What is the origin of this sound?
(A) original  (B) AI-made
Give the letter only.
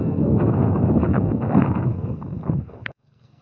B